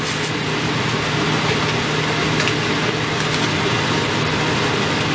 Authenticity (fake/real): real